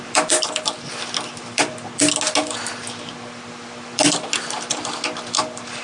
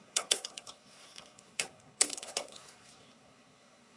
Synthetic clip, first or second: second